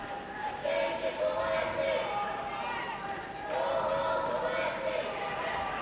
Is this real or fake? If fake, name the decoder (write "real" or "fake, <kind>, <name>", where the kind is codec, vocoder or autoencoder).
real